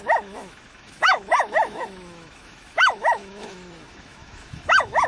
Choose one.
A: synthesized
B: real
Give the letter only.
A